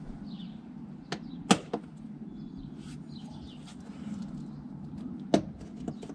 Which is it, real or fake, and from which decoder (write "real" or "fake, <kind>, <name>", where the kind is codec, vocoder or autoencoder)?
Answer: real